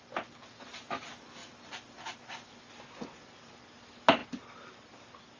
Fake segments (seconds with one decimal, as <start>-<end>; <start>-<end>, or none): none

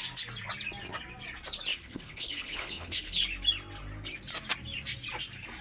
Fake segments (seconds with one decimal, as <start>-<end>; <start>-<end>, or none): 1.7-3.2

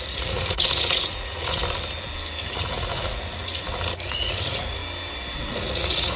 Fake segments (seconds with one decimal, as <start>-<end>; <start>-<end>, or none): 0.0-1.6; 2.4-4.8; 5.4-6.2